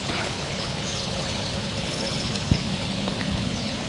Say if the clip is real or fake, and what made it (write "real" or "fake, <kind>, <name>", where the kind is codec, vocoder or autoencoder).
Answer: fake, codec, HILCodec